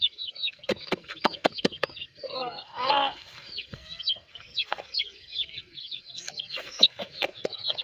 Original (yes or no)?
no